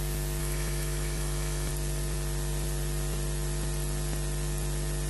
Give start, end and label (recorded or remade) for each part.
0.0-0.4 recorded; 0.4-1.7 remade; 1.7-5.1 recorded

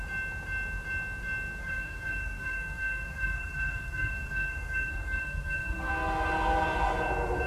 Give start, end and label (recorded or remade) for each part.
0.0-1.6 recorded; 1.6-5.9 remade; 5.9-7.5 recorded